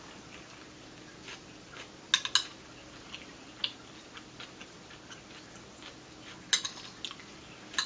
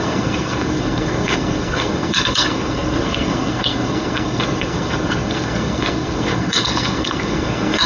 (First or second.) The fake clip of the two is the second